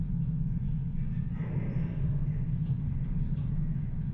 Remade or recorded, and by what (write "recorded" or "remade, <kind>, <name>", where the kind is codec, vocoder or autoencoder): recorded